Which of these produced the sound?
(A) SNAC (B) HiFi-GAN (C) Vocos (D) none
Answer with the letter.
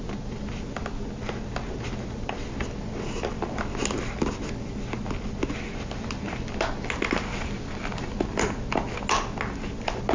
D